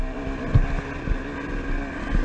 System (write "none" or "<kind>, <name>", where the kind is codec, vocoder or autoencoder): none